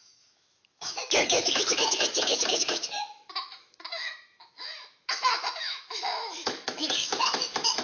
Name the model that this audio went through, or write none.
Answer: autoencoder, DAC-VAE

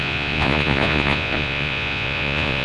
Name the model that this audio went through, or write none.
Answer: vocoder, Vocos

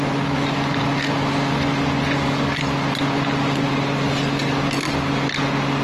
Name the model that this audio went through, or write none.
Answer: none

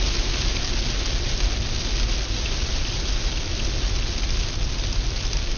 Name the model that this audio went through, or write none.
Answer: none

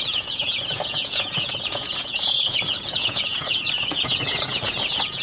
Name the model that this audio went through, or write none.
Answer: vocoder, Vocos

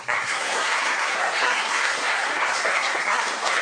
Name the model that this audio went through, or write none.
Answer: codec, SNAC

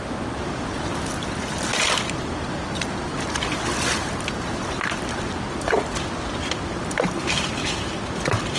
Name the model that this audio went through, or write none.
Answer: none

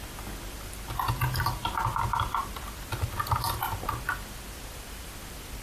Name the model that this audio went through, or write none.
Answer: none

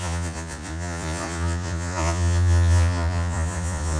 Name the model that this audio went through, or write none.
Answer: vocoder, Vocos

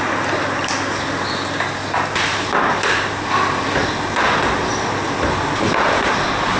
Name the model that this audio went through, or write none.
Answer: none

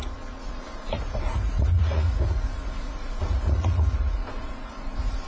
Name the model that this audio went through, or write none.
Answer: vocoder, Vocos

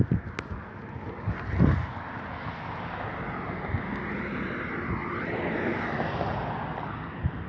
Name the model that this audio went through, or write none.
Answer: none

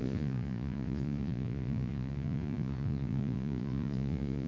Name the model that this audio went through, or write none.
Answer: vocoder, Vocos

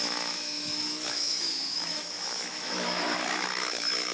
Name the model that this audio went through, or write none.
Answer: autoencoder, DAC-VAE